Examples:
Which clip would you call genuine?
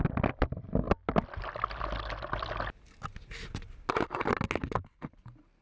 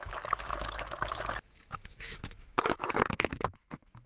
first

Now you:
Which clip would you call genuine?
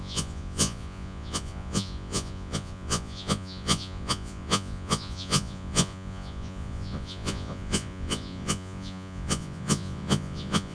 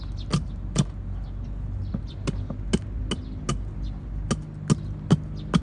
second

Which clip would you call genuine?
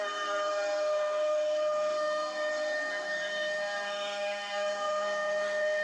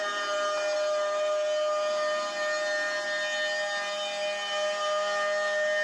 second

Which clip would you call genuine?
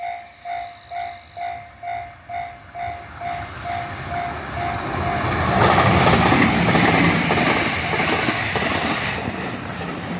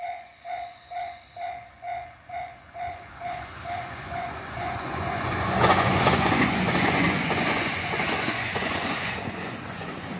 first